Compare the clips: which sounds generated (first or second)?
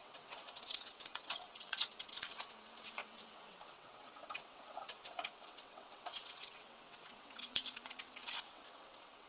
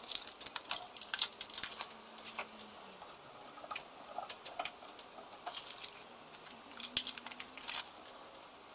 first